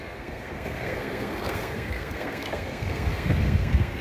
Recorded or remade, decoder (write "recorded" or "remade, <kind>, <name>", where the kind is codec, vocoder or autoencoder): remade, codec, SNAC